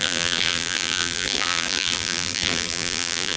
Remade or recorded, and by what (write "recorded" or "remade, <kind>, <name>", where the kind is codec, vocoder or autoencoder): remade, vocoder, BigVGAN v2